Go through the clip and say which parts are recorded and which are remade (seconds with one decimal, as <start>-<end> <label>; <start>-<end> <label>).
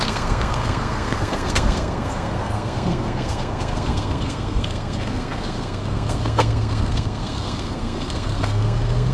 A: 0.0-9.1 remade